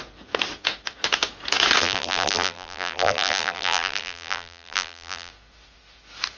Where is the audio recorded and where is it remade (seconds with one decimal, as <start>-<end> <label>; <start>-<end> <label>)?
0.0-1.8 recorded; 1.8-5.3 remade; 5.3-6.4 recorded